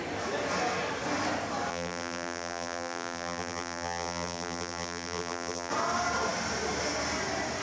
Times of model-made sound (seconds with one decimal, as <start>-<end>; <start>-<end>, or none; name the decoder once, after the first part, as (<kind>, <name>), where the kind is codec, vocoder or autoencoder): 1.7-5.7 (vocoder, BigVGAN v2)